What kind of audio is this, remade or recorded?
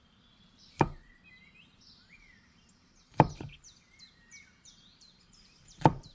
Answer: remade